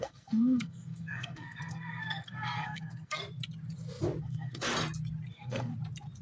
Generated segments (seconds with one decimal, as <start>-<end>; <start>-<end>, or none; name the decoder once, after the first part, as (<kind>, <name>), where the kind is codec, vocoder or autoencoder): 0.0-3.2 (codec, SNAC); 4.2-4.7; 5.3-5.7